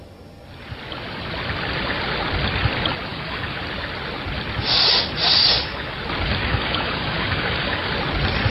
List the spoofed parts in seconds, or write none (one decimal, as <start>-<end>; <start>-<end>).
3.1-3.6; 5.4-6.0; 6.4-7.9